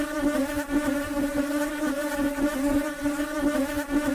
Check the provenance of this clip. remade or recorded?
recorded